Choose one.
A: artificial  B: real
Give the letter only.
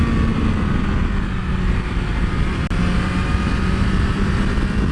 B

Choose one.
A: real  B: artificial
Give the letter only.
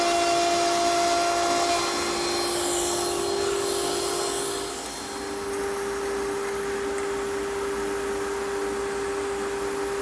A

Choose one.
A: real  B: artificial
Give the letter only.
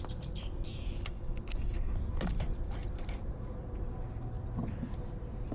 A